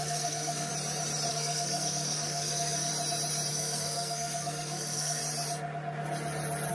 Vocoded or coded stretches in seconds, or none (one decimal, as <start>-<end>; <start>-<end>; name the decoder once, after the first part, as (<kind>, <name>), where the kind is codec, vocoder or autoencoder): 0.0-0.7 (codec, SNAC); 1.3-2.9; 3.5-5.2